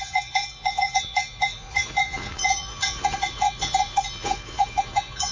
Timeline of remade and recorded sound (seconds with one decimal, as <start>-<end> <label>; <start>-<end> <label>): 0.0-5.3 remade